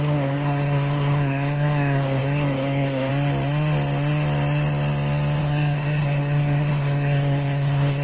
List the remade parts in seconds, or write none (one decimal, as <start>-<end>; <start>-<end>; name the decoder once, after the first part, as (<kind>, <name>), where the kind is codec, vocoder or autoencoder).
0.0-3.1 (codec, SNAC); 5.4-8.0